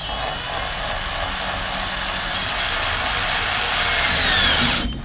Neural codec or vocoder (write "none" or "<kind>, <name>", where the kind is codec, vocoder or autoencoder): none